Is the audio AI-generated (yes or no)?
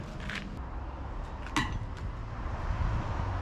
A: no